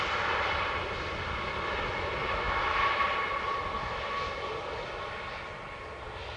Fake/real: real